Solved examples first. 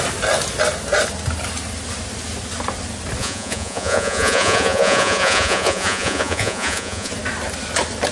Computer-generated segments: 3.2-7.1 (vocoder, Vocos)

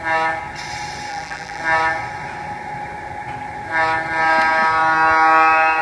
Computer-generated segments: 1.1-1.6 (vocoder, BigVGAN v2)

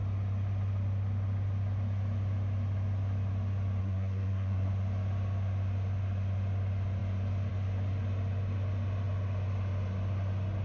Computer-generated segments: 3.8-4.7 (codec, SNAC)

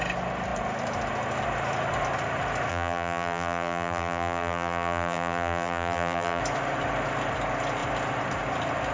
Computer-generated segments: 2.7-6.4 (vocoder, BigVGAN v2)